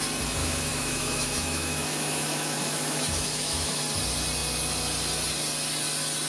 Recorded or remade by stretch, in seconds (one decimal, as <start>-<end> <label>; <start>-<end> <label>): 0.0-0.4 recorded; 0.4-3.8 remade; 3.8-6.3 recorded